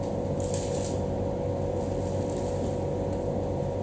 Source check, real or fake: real